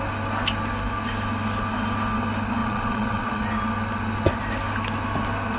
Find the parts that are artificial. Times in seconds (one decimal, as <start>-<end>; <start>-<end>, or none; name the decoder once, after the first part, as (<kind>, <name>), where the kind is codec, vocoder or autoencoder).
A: 2.6-3.5 (vocoder, WaveNeXt)